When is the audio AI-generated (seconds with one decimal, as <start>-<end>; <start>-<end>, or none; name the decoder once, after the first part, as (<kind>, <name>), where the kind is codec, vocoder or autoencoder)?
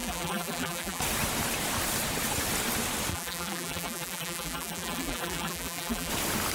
0.0-1.0 (vocoder, BigVGAN v2); 3.1-6.1